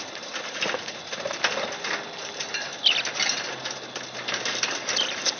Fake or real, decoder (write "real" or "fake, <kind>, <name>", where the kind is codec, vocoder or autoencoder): real